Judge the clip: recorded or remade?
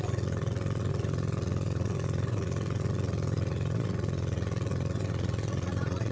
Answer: remade